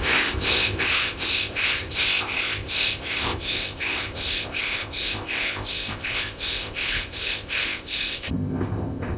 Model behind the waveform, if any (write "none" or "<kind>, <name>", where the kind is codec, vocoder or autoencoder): codec, ZipCodec